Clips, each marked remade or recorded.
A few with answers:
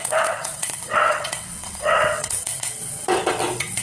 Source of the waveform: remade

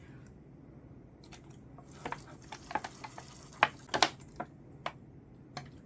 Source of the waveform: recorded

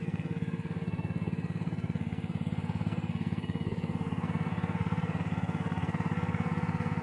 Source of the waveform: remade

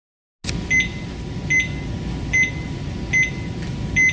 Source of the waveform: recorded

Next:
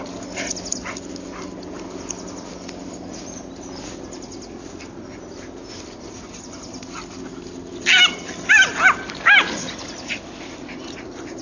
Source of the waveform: recorded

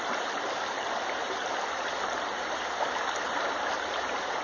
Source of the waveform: recorded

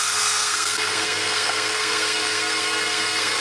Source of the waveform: remade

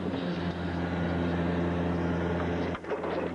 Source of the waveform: recorded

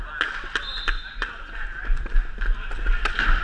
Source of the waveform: recorded